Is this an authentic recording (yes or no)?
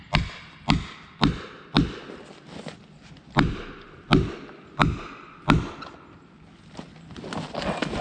yes